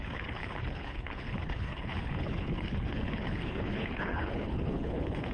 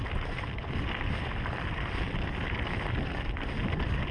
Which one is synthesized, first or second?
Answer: first